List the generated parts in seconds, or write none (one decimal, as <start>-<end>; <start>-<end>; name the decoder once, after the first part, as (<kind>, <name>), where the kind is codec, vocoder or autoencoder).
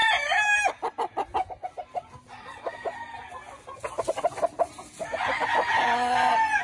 none